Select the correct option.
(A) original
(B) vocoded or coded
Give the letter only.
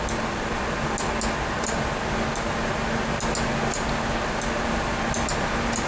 A